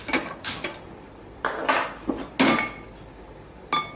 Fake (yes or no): no